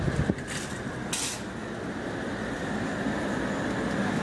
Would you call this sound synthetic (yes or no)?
no